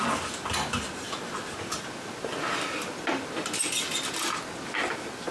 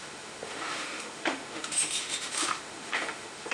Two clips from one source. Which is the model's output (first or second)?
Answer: second